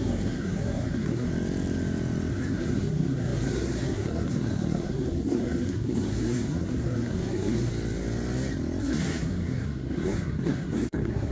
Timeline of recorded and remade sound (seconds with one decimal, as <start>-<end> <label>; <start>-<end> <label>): 0.0-1.3 remade; 1.3-2.3 recorded; 2.3-7.7 remade; 7.7-8.8 recorded; 8.8-11.3 remade